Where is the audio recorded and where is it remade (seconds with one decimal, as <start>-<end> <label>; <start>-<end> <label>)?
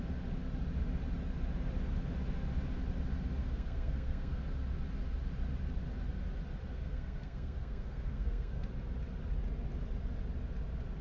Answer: 0.0-3.4 recorded; 3.4-4.4 remade; 4.4-6.7 recorded; 6.7-8.7 remade; 8.7-11.0 recorded